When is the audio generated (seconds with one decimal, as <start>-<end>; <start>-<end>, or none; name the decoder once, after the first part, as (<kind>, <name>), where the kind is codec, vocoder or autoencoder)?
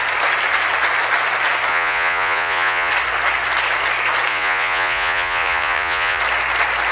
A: 1.7-2.9 (vocoder, Vocos); 4.3-6.2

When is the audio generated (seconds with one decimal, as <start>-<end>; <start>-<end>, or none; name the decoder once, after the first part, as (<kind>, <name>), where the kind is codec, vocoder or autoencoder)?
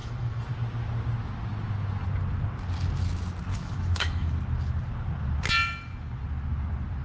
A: 0.0-0.5 (autoencoder, DAC-VAE); 3.5-4.4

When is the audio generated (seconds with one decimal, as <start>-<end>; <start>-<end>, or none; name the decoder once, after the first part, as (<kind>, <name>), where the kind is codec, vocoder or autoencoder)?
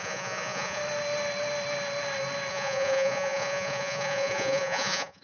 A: 0.0-0.8 (vocoder, Vocos); 2.5-5.2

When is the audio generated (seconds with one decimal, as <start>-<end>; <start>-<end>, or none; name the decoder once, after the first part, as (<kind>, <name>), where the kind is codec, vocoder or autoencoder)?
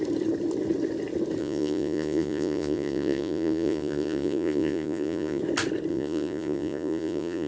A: 1.4-5.4 (vocoder, Vocos); 5.9-7.5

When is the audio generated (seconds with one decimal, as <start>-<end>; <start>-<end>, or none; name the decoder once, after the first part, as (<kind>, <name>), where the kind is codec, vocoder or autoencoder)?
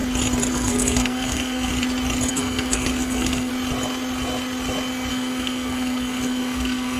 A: 0.5-1.7 (codec, SNAC); 2.3-3.5; 5.1-7.0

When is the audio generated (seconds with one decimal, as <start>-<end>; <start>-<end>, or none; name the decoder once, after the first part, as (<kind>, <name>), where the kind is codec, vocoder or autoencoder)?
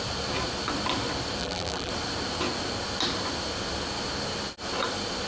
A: 1.4-1.9 (vocoder, BigVGAN v2)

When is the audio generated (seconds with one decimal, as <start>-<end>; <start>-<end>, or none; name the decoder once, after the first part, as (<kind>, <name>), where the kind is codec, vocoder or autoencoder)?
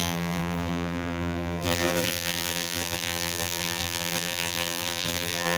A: 0.0-5.6 (vocoder, BigVGAN v2)